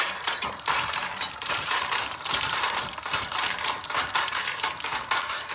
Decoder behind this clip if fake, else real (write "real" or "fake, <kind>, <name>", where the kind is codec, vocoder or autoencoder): fake, vocoder, BigVGAN v2